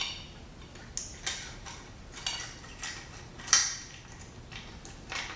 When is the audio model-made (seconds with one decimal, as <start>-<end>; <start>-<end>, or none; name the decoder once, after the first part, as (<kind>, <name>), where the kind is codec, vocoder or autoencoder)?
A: none